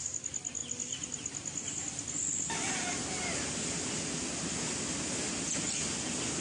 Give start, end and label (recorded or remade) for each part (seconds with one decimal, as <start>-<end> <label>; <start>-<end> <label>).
0.0-6.4 recorded